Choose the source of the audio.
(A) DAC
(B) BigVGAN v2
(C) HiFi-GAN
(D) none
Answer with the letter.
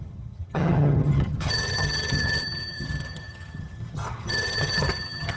C